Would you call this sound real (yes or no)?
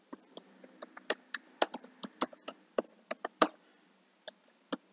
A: yes